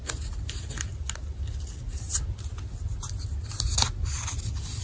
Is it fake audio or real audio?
real